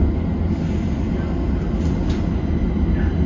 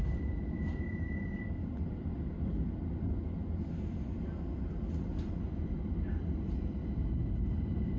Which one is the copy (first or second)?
second